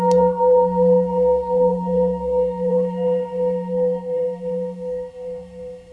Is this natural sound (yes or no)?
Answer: no